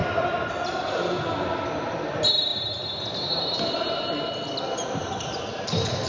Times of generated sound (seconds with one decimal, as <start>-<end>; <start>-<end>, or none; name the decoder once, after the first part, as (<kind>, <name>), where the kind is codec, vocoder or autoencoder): 0.0-0.8 (vocoder, BigVGAN v2); 2.5-6.1